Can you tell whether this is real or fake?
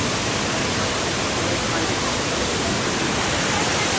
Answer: real